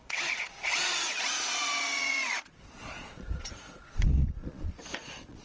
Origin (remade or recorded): remade